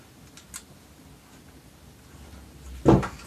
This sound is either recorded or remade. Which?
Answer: recorded